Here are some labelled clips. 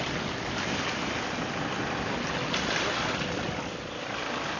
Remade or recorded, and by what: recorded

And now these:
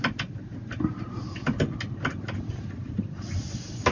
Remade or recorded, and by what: recorded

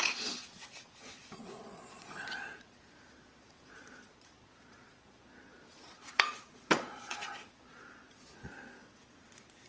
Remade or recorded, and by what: remade, vocoder, Vocos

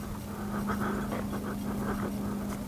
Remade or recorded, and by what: recorded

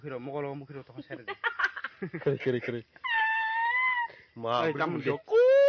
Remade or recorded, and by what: recorded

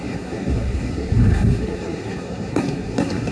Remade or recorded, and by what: remade, codec, SNAC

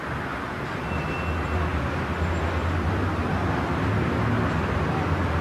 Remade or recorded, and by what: recorded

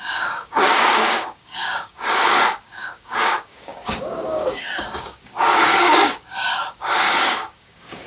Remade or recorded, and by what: remade, codec, DAC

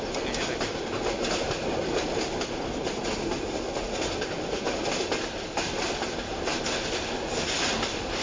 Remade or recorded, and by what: recorded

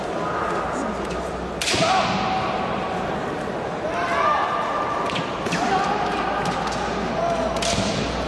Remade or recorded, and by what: recorded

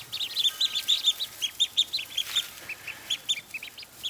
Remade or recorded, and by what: recorded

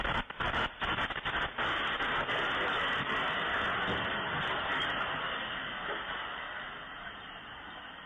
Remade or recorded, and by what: recorded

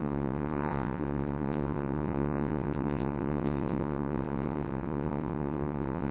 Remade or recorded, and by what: remade, vocoder, WaveNeXt